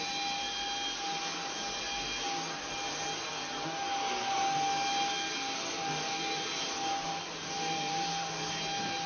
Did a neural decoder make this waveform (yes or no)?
no